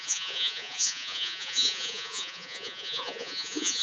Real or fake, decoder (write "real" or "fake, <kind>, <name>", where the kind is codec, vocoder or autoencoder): fake, vocoder, Vocos